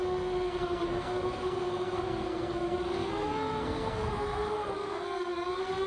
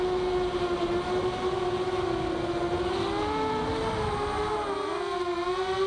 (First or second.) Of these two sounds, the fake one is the first